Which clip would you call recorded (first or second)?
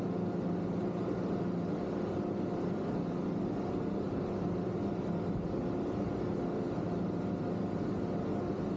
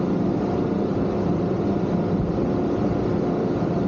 first